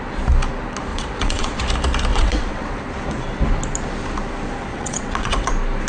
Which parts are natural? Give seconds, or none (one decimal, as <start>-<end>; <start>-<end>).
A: 0.0-0.9; 1.6-2.1; 2.8-4.7; 5.5-5.9

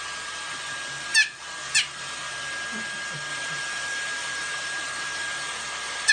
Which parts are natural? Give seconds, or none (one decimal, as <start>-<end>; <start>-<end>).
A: 0.0-3.3

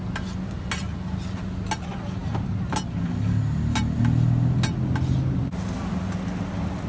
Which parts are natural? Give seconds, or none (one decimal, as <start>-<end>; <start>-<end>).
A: 0.0-6.9

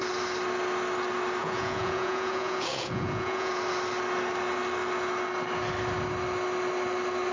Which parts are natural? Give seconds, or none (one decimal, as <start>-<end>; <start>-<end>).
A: 0.0-1.4; 3.5-7.3

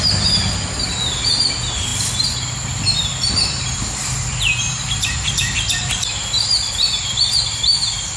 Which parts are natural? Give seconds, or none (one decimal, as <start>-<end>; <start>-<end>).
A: 0.0-8.2

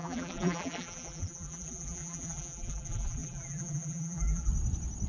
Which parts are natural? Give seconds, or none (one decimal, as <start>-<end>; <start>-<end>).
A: 4.5-5.1

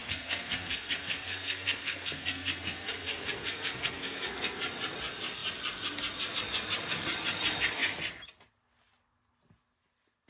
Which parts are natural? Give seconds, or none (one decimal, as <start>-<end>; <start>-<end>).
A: 4.6-10.3